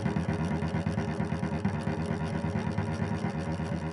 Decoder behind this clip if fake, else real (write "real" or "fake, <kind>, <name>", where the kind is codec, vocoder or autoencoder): real